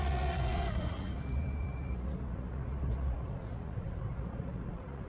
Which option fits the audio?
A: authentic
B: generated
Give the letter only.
B